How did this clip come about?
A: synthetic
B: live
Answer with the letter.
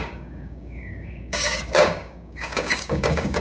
A